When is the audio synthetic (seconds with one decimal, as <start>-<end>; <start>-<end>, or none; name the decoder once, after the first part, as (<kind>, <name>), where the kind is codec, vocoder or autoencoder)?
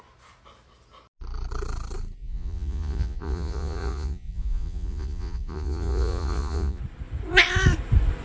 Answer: 2.2-6.8 (vocoder, Vocos)